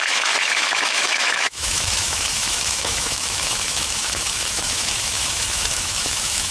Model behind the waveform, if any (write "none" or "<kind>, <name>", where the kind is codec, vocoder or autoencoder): autoencoder, DAC-VAE